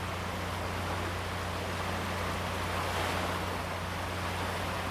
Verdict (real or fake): real